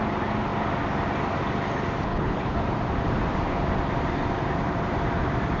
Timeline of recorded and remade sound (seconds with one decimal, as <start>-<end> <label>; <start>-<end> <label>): 0.0-2.1 recorded; 2.1-2.6 remade; 2.6-5.6 recorded